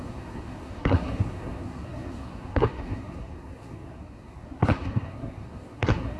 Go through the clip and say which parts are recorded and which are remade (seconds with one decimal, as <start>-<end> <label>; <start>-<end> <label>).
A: 0.0-6.2 remade